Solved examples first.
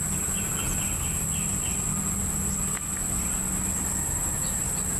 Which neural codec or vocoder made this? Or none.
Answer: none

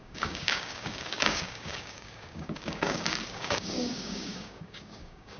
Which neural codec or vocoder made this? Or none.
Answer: codec, DAC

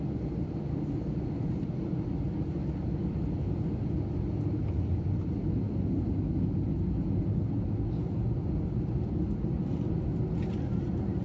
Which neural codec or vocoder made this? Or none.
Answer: none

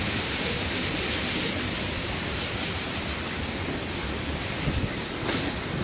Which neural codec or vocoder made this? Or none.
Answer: none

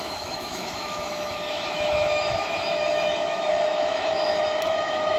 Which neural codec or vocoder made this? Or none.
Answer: autoencoder, DAC-VAE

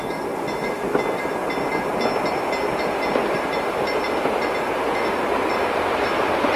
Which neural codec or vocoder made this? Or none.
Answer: none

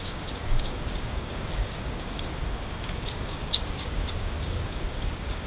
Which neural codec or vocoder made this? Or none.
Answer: codec, DAC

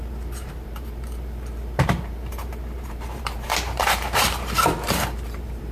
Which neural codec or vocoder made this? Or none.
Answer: vocoder, BigVGAN v2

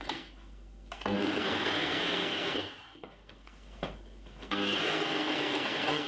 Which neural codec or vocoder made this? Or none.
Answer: codec, SNAC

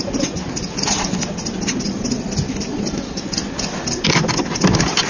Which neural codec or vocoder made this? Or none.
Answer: none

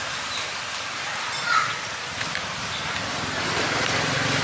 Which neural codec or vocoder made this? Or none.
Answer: none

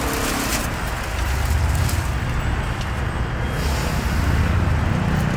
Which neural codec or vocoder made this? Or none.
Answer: none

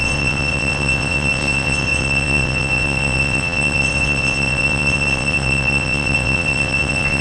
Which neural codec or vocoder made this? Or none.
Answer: vocoder, WaveNeXt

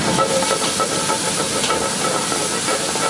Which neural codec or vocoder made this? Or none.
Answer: vocoder, BigVGAN v2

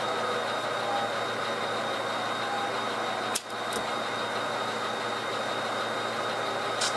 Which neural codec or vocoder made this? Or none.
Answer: none